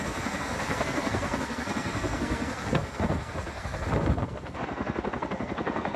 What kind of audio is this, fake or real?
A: fake